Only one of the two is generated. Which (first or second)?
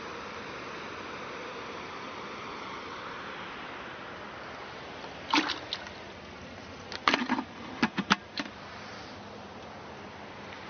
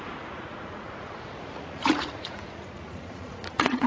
second